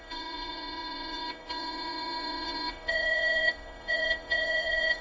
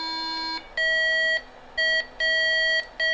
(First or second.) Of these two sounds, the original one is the second